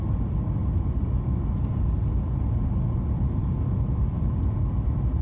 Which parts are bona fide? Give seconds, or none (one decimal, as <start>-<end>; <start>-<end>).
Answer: 0.0-5.2